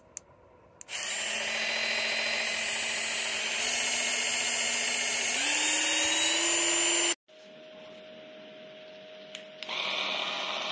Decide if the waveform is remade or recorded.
recorded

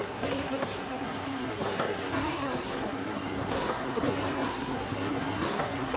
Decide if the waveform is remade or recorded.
remade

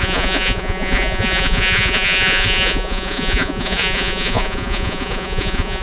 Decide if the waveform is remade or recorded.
remade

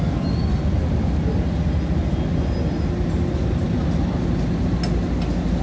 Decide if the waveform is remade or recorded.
recorded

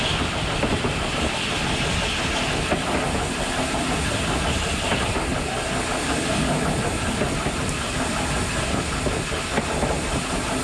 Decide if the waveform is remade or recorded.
recorded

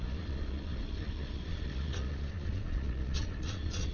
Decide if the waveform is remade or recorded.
remade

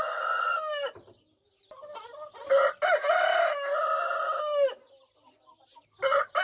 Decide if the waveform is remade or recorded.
recorded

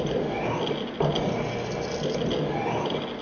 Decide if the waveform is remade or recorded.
recorded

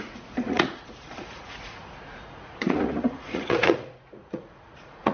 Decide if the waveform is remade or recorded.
remade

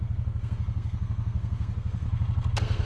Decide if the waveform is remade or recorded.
remade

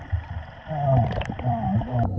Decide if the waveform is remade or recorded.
recorded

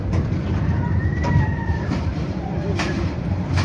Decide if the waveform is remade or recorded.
remade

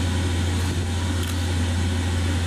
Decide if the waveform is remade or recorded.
recorded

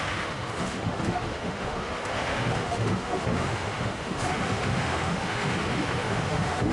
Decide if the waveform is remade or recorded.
remade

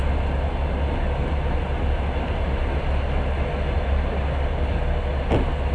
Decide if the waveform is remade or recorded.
recorded